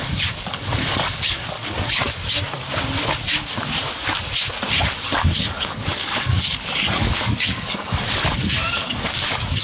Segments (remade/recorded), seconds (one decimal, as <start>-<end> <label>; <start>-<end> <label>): 0.0-2.0 remade; 2.0-4.9 recorded; 4.9-9.6 remade